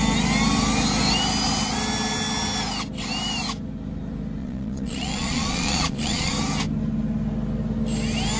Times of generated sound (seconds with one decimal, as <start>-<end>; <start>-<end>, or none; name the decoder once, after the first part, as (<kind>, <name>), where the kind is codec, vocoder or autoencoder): 4.4-6.3 (vocoder, Vocos)